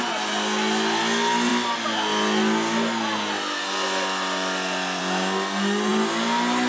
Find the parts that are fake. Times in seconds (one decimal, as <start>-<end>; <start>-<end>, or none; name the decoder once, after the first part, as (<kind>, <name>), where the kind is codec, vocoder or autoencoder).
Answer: none